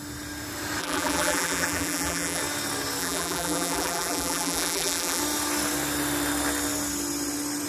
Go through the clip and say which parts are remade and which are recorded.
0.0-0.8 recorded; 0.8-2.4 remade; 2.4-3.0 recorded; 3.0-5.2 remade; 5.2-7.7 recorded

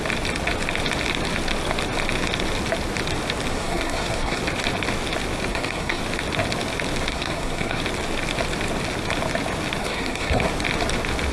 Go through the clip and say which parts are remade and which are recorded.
0.0-3.5 recorded; 3.5-4.4 remade; 4.4-5.5 recorded; 5.5-6.0 remade; 6.0-7.1 recorded; 7.1-7.8 remade; 7.8-9.8 recorded; 9.8-10.5 remade; 10.5-11.3 recorded

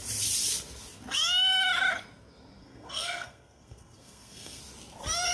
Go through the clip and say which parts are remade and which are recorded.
0.0-2.6 recorded; 2.6-4.6 remade; 4.6-5.3 recorded

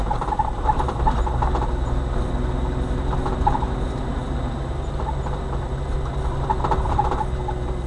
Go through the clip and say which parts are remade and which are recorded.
0.0-7.9 recorded

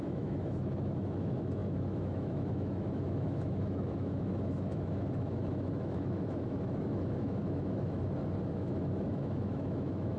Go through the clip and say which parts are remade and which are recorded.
0.0-8.0 remade; 8.0-8.5 recorded; 8.5-10.2 remade